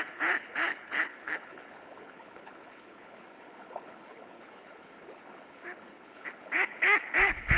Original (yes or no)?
no